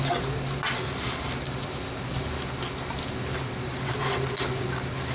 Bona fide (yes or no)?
yes